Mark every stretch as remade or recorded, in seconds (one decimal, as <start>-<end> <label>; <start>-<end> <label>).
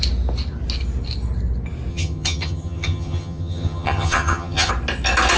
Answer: 0.0-1.9 recorded; 1.9-4.7 remade; 4.7-5.4 recorded